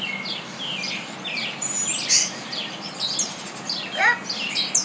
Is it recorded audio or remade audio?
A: recorded